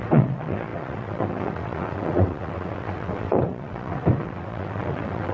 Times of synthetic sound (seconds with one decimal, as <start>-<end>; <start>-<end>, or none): 0.0-5.3